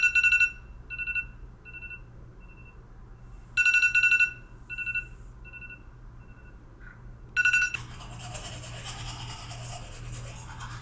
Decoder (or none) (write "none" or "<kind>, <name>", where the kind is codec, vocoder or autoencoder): none